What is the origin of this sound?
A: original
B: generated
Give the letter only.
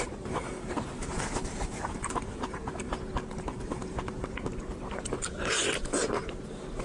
A